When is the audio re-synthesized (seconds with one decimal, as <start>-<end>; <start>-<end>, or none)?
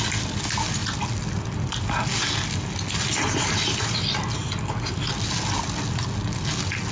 none